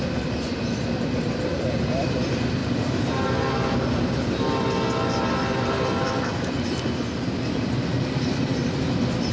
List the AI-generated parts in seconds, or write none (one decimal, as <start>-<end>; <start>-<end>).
none